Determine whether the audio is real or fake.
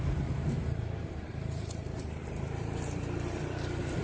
fake